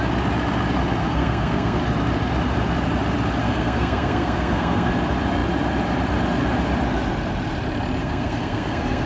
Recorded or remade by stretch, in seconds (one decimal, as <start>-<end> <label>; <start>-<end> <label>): 0.0-1.0 recorded; 1.0-1.8 remade; 1.8-3.4 recorded; 3.4-4.9 remade; 4.9-8.0 recorded; 8.0-9.1 remade